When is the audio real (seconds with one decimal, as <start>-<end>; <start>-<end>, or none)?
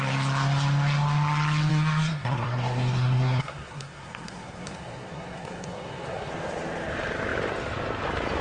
0.0-1.7; 6.3-8.4